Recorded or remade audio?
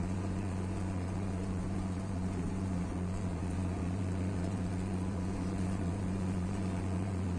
remade